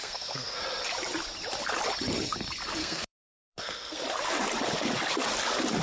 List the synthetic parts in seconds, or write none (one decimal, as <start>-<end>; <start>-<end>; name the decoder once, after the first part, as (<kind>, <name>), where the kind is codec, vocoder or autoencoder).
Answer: 0.0-0.6 (codec, SNAC); 2.8-4.0